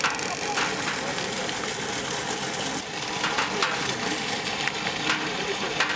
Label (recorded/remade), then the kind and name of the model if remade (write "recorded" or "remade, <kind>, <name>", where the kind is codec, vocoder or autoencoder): recorded